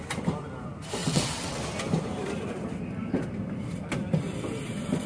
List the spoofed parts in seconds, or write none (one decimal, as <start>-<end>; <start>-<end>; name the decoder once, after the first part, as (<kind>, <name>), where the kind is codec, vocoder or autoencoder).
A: 1.0-1.6 (vocoder, WaveNeXt)